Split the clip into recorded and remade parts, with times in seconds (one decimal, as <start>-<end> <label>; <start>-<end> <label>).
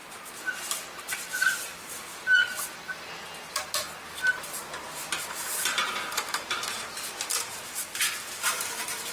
0.0-1.0 recorded; 1.0-2.1 remade; 2.1-4.2 recorded; 4.2-9.1 remade